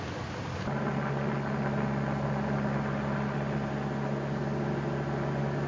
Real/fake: real